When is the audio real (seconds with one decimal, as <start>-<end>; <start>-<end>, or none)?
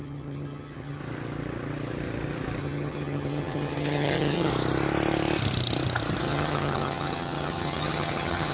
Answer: 1.0-2.6; 4.5-6.2